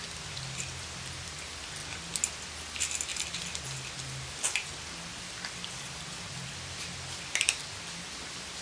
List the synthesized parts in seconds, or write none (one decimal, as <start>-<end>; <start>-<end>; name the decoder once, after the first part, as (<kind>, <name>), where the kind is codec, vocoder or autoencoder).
3.1-4.4 (vocoder, BigVGAN v2)